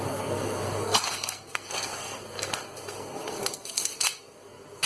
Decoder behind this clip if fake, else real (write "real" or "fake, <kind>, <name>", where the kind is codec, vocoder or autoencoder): fake, codec, SNAC